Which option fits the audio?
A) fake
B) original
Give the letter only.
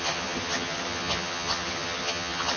A